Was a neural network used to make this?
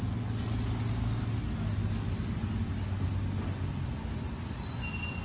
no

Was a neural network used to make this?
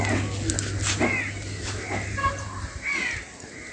no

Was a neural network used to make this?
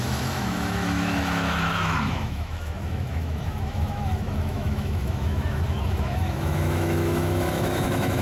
yes